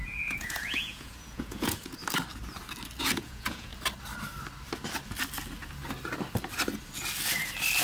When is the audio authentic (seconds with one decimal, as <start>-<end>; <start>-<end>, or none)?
2.0-3.0; 3.7-7.8